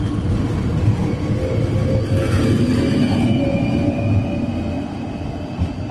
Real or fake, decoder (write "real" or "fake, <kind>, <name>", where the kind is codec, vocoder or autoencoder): real